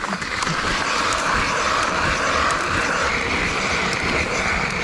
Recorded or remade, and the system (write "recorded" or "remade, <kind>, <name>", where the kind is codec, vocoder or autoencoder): remade, vocoder, BigVGAN v2